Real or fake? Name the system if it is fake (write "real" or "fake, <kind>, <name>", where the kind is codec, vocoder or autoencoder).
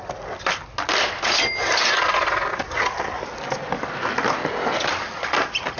real